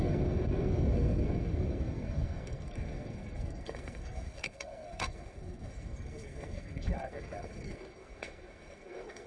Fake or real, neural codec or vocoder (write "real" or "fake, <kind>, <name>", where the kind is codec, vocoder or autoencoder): fake, codec, SNAC